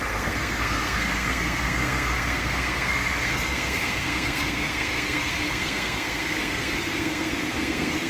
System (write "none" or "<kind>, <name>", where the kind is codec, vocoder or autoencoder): codec, SNAC